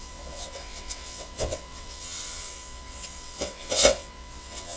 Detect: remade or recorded remade